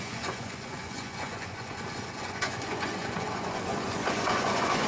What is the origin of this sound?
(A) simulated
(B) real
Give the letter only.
A